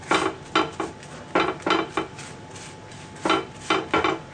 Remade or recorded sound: recorded